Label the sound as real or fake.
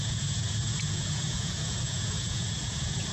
fake